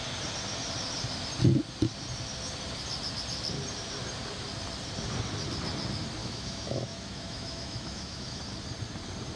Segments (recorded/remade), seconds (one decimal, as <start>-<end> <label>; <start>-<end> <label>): 0.0-6.2 recorded; 6.2-8.4 remade; 8.4-9.4 recorded